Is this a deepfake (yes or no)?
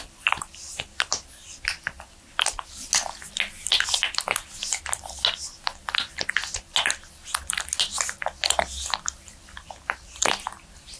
no